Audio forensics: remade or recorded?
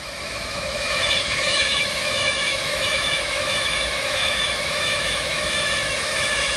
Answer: remade